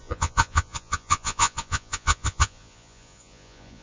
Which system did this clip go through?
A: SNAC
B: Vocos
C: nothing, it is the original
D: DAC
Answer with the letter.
B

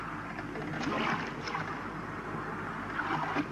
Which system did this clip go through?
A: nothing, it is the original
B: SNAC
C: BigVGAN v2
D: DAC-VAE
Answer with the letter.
A